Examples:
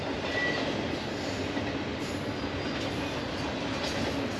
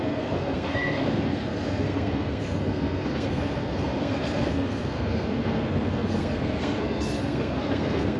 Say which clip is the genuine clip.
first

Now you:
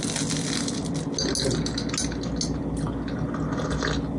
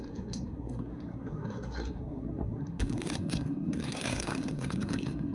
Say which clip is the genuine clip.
first